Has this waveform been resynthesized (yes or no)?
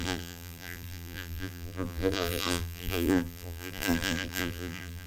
yes